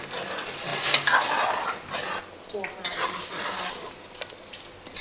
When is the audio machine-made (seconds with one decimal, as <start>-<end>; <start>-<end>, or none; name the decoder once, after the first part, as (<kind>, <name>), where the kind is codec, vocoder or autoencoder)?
none